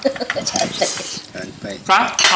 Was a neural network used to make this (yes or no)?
no